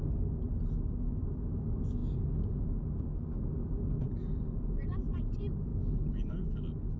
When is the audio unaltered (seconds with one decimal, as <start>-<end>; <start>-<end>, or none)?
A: 0.0-7.0